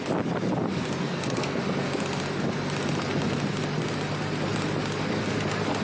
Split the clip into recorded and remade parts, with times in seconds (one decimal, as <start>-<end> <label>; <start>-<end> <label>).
0.0-1.0 recorded; 1.0-1.6 remade; 1.6-5.8 recorded